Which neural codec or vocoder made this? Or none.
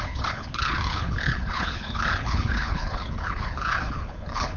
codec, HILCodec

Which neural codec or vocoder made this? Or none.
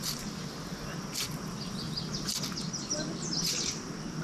none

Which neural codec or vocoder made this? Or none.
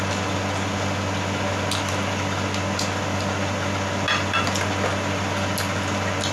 none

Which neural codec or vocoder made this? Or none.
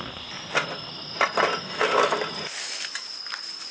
none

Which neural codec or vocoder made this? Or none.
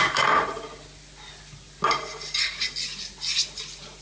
none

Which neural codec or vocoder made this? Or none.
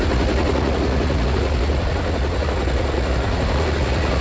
vocoder, Vocos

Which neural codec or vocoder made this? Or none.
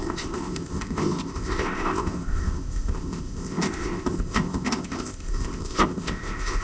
codec, ZipCodec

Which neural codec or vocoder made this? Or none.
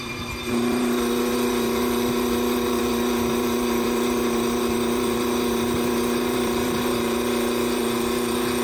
vocoder, BigVGAN v2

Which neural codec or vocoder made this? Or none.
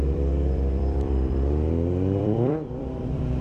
vocoder, BigVGAN v2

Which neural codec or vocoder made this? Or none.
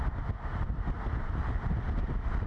none